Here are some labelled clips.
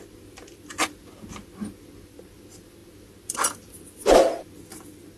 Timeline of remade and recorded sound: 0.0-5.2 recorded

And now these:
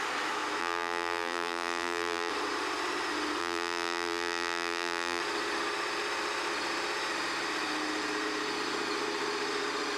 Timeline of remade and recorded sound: 0.0-0.6 recorded; 0.6-2.3 remade; 2.3-3.4 recorded; 3.4-5.2 remade; 5.2-10.0 recorded

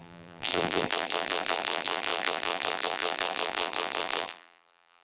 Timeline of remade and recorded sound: 0.0-5.0 remade

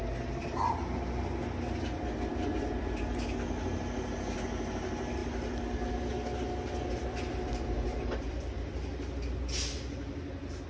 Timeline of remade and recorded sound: 0.0-7.0 recorded; 7.0-8.3 remade; 8.3-10.7 recorded